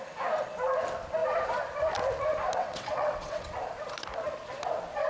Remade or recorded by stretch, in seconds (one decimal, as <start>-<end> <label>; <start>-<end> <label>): 0.0-2.6 recorded; 2.6-3.5 remade; 3.5-5.1 recorded